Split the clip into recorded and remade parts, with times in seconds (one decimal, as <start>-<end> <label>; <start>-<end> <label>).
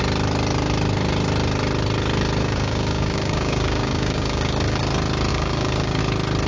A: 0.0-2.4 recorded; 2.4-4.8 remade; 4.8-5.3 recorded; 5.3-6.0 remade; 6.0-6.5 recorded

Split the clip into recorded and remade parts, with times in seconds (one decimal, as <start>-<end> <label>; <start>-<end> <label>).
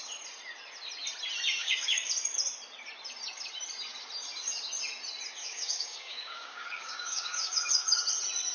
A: 0.0-1.6 recorded; 1.6-2.1 remade; 2.1-5.4 recorded; 5.4-8.0 remade; 8.0-8.5 recorded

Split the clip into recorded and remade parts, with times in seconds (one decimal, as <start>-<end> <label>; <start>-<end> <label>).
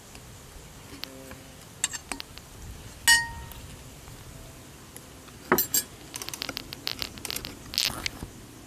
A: 0.0-8.7 recorded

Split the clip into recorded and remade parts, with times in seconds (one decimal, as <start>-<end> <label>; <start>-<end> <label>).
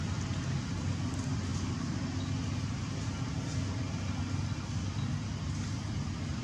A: 0.0-6.4 recorded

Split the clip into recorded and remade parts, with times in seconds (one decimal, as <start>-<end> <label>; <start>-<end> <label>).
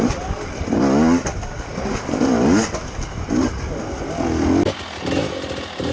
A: 0.0-5.9 recorded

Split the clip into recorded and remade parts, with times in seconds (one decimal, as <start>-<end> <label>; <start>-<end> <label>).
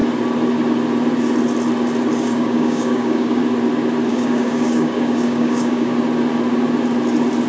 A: 0.0-2.2 recorded; 2.2-3.4 remade; 3.4-4.1 recorded; 4.1-5.9 remade; 5.9-7.5 recorded